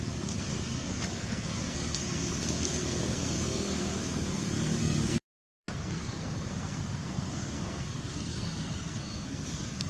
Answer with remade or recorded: remade